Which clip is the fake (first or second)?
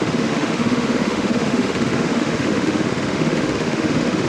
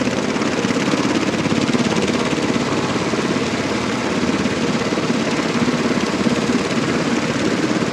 first